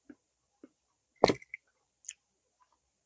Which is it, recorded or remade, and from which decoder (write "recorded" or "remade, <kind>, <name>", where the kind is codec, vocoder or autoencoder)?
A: recorded